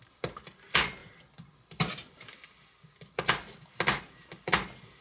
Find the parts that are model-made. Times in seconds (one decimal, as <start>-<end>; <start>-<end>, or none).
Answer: none

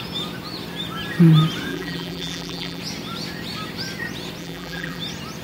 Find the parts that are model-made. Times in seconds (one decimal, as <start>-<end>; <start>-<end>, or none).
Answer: 1.7-2.8; 4.4-5.0

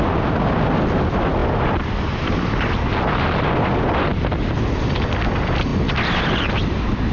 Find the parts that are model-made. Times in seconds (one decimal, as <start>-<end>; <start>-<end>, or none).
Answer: 1.4-3.0; 5.7-6.2

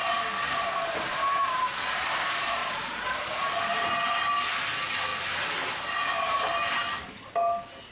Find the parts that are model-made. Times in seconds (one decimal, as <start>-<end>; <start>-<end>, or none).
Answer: 2.6-3.3